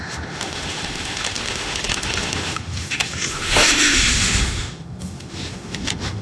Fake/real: fake